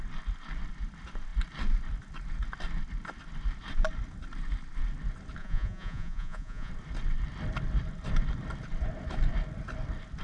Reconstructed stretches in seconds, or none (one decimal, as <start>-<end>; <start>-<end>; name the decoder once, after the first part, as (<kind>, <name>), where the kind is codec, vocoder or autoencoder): 5.4-6.7 (vocoder, Vocos)